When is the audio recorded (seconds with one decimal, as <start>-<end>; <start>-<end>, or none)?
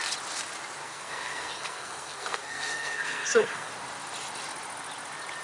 0.0-0.8; 3.7-5.4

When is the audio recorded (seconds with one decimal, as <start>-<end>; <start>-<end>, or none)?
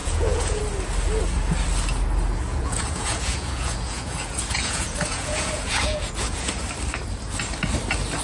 0.6-2.5; 6.6-8.2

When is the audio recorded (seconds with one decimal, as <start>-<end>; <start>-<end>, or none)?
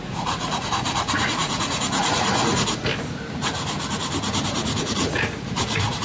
2.9-4.8